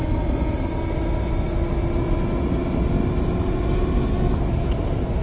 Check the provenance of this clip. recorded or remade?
recorded